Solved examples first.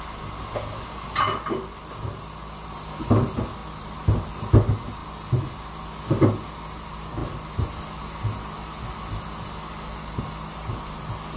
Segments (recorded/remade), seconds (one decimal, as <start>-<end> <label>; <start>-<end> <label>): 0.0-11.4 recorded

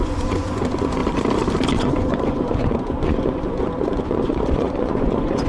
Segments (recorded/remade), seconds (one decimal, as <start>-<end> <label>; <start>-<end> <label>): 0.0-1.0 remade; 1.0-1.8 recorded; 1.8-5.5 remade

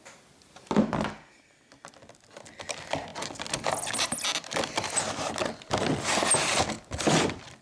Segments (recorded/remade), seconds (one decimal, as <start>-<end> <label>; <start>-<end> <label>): 0.0-7.6 recorded

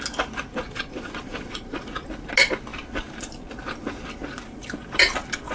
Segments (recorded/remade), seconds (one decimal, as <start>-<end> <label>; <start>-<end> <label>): 0.0-0.5 recorded; 0.5-2.1 remade; 2.1-5.5 recorded

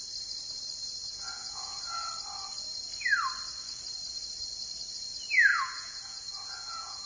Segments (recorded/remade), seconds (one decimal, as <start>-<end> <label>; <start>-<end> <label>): 0.0-1.1 recorded; 1.1-2.1 remade; 2.1-5.5 recorded; 5.5-7.1 remade

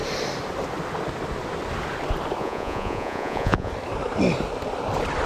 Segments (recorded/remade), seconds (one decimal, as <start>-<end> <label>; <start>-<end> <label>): 0.0-2.4 recorded; 2.4-3.7 remade; 3.7-5.3 recorded

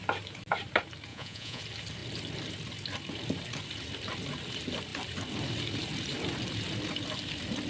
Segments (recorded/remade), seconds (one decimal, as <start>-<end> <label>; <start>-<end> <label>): 0.0-1.1 recorded; 1.1-1.6 remade; 1.6-7.7 recorded